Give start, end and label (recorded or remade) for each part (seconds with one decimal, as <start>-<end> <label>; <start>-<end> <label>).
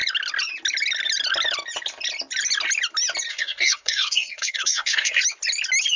0.0-3.3 recorded; 3.3-5.2 remade; 5.2-6.0 recorded